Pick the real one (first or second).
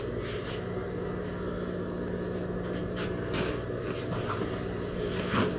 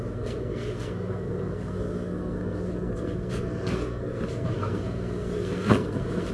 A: first